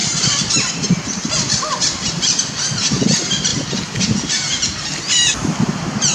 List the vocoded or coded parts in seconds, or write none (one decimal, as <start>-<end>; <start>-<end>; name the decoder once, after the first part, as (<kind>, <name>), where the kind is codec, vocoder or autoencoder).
0.0-2.5 (vocoder, BigVGAN v2)